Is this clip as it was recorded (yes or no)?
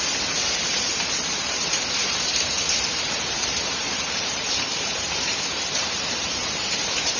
no